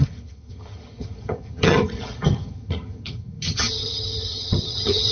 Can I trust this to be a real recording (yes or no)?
no